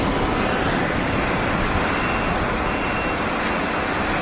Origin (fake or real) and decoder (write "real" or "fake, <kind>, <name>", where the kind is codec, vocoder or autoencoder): real